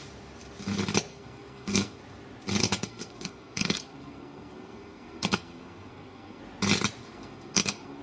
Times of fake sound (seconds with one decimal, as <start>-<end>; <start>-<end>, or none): 1.1-2.0; 2.6-6.4; 7.0-8.0